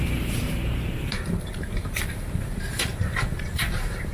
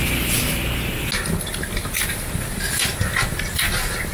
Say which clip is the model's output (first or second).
first